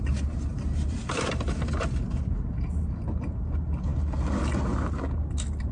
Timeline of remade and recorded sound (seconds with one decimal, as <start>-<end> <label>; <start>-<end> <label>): 0.0-0.5 recorded; 0.5-1.3 remade; 1.3-5.7 recorded